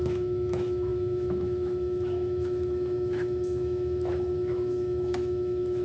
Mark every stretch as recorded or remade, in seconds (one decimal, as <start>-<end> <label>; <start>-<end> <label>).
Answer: 0.0-5.8 remade